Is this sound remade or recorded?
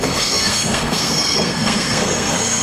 remade